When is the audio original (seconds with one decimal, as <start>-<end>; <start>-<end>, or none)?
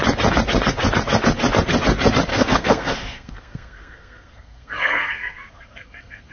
0.0-2.3